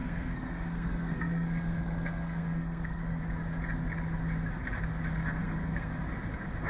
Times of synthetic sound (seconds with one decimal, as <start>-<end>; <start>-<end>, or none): 0.0-3.2; 5.4-5.9